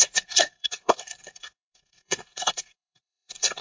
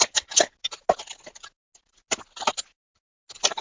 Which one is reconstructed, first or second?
first